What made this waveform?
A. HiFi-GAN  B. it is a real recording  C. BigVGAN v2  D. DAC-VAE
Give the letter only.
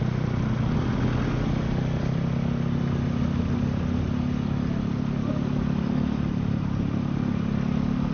B